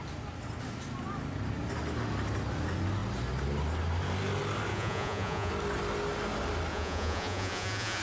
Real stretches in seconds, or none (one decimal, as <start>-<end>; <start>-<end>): 0.0-4.7; 5.5-6.7